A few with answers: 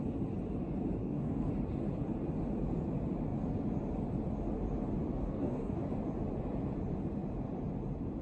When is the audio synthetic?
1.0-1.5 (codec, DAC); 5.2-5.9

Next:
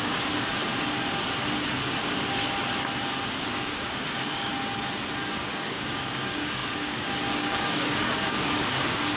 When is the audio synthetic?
0.0-0.6 (codec, DAC); 2.0-2.4; 3.4-4.5; 5.3-9.2

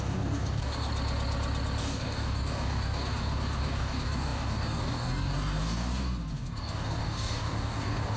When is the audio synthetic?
0.0-0.9 (codec, DAC); 1.8-8.2

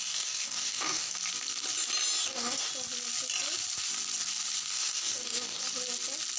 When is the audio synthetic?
0.0-1.2 (codec, DAC); 2.2-2.7; 4.7-5.6

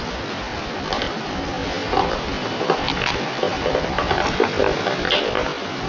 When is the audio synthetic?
none

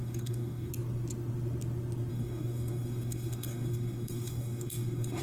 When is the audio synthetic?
0.0-0.7 (codec, DAC); 2.1-5.2

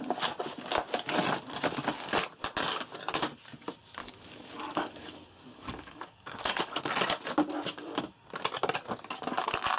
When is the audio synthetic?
4.0-6.8 (codec, DAC)